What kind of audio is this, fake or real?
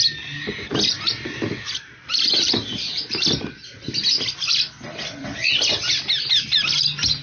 real